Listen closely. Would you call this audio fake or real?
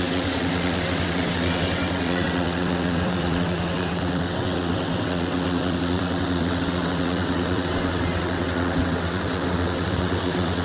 fake